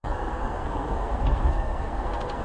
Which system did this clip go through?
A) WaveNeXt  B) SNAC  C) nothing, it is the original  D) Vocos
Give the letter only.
B